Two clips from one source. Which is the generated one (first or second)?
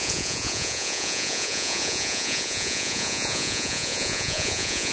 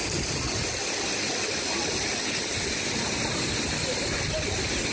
first